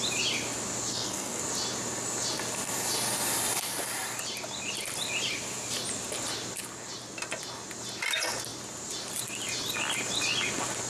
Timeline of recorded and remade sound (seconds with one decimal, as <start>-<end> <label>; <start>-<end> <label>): 0.0-0.9 recorded; 0.9-1.4 remade; 1.4-10.9 recorded